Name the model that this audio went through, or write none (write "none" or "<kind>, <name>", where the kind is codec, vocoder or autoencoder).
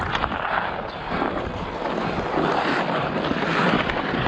none